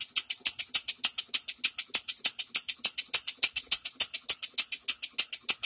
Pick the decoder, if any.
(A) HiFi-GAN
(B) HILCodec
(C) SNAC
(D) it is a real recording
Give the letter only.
D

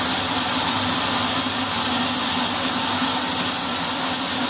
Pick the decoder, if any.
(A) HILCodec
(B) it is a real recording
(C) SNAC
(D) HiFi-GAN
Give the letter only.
B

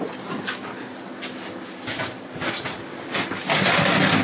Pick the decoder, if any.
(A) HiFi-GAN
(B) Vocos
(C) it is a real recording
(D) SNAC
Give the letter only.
C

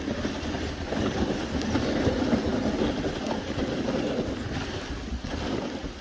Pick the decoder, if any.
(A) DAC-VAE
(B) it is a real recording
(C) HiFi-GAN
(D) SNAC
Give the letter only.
B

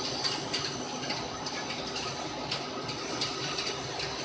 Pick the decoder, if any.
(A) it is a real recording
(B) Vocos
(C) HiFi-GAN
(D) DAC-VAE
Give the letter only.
A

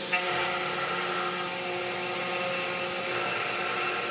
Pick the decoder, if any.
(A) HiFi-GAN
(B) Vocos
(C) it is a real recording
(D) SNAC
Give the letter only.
C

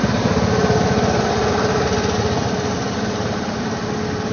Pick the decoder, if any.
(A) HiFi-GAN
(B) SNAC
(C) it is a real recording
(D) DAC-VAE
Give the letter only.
C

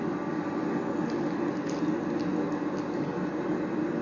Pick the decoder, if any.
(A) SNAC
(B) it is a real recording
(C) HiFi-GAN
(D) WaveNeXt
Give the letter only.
B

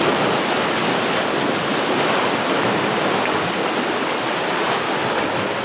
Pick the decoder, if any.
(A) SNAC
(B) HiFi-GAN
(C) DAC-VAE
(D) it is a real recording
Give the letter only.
D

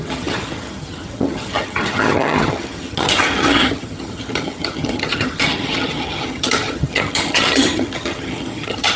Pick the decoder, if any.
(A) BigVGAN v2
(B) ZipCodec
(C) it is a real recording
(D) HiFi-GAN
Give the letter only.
D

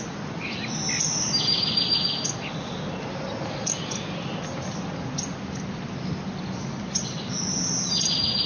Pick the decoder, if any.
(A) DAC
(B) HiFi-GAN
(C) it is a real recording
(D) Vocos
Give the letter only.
C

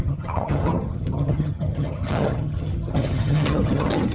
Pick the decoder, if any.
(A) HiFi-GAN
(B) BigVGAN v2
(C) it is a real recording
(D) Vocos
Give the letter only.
A